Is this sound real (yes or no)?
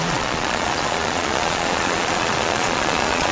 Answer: no